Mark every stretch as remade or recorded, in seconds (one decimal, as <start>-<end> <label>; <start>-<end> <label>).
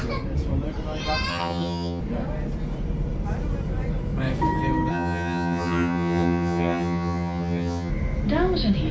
0.0-1.3 recorded; 1.3-2.0 remade; 2.0-4.9 recorded; 4.9-7.9 remade; 7.9-8.9 recorded